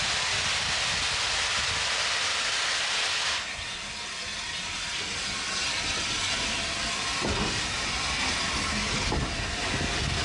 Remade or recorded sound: recorded